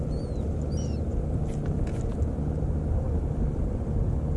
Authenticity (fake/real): real